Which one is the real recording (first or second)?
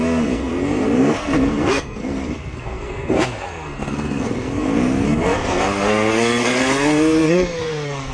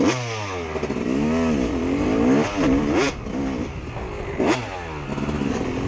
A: second